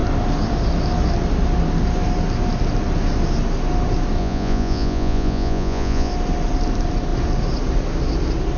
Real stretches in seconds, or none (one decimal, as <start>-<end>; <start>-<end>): 0.0-4.2; 6.1-8.6

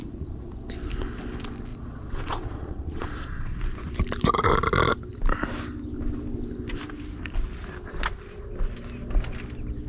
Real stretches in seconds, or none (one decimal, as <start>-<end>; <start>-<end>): 0.5-1.7; 3.6-9.9

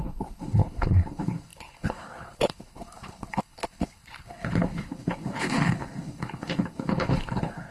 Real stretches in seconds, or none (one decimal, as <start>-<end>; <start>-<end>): none

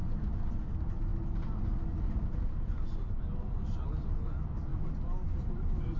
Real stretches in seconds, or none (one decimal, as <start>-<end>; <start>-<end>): 0.0-6.0

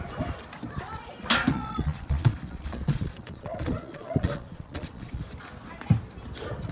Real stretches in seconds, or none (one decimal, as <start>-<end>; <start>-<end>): 0.0-1.5; 5.2-6.7

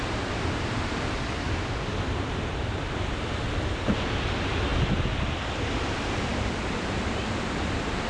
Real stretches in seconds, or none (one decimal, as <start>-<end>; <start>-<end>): 0.0-8.1

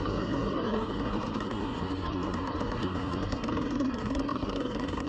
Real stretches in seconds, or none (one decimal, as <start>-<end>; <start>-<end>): none

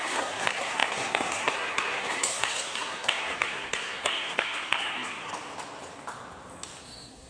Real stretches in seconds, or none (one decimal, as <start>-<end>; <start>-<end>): 5.3-6.8